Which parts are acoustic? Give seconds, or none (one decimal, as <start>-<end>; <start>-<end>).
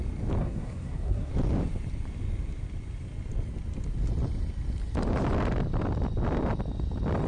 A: 0.0-0.4; 1.3-7.3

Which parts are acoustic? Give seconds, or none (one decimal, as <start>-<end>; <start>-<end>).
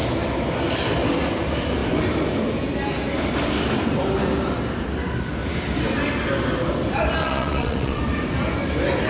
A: 0.0-7.2; 8.0-9.1